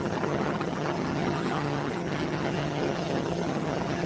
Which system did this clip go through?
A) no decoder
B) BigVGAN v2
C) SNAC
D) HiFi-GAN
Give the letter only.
D